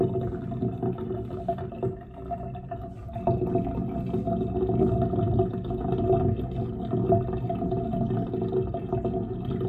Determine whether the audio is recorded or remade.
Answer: recorded